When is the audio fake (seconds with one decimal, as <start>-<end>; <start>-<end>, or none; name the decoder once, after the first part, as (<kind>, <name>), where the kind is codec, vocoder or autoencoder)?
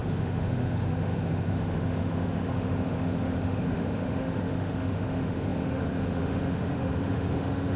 0.0-7.8 (autoencoder, DAC-VAE)